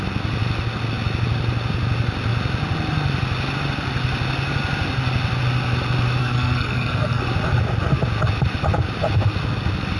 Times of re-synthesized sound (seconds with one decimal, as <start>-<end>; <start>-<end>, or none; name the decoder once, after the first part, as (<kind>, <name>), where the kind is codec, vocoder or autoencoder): 6.2-7.2 (codec, SNAC)